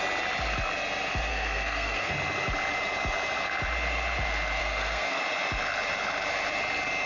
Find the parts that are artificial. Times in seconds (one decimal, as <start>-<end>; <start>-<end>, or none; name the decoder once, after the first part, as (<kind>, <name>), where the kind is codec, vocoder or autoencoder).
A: 1.3-2.1 (codec, SNAC); 4.6-5.2